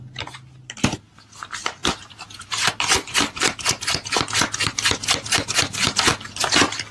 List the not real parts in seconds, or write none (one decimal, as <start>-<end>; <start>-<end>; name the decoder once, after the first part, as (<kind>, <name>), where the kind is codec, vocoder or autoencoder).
1.8-3.7 (vocoder, BigVGAN v2)

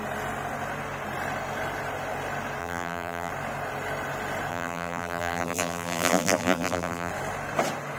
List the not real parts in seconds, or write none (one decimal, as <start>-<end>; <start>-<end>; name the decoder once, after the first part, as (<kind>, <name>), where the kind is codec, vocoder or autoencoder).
2.6-3.3 (vocoder, BigVGAN v2); 4.5-7.1

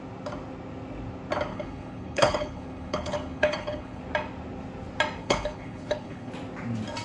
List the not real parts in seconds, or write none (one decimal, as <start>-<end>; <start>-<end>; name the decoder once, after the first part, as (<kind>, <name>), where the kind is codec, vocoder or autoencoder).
1.5-4.0 (codec, HILCodec); 5.2-6.3

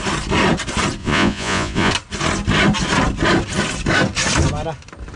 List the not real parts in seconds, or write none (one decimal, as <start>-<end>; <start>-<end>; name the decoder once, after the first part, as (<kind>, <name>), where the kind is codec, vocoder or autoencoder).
1.0-1.9 (vocoder, Vocos)

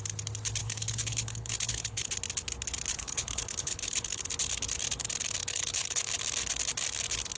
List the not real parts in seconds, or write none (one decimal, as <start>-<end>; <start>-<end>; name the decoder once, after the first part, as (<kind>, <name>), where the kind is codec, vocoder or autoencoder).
0.6-2.1 (codec, HILCodec); 2.9-4.2; 5.5-6.0

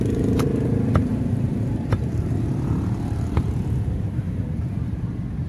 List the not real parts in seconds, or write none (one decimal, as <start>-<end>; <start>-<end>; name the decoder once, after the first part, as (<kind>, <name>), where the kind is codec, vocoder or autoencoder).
1.1-4.4 (vocoder, BigVGAN v2)

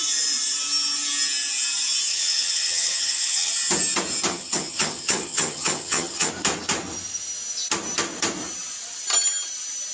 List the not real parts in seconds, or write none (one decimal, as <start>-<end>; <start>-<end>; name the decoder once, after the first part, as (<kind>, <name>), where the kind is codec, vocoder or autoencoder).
2.1-3.5 (vocoder, HiFi-GAN); 4.3-6.3